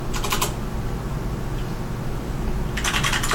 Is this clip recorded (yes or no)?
yes